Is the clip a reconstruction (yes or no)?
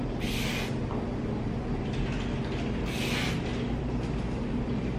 no